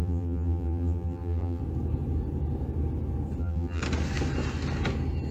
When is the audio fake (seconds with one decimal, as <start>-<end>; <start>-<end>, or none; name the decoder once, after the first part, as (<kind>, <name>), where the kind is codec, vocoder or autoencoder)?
0.0-1.6 (vocoder, BigVGAN v2); 3.4-3.8